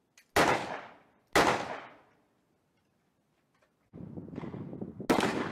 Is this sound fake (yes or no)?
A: no